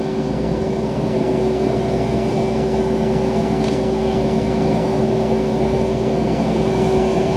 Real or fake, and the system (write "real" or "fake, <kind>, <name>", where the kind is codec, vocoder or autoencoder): fake, codec, SNAC